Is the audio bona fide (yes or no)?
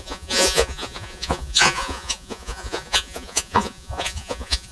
no